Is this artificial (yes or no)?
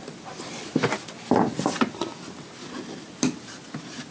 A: no